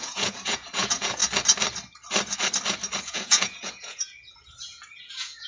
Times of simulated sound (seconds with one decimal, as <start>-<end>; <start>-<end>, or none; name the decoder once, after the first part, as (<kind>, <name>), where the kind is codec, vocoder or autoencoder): 0.0-1.2 (vocoder, Vocos); 3.0-5.5